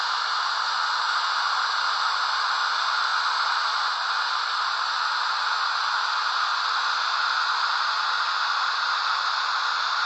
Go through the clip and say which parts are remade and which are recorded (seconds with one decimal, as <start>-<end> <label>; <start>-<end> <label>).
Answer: 0.0-3.1 recorded; 3.1-3.8 remade; 3.8-6.5 recorded; 6.5-8.0 remade; 8.0-10.1 recorded